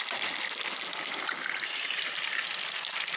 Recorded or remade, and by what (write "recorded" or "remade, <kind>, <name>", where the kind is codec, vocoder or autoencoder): recorded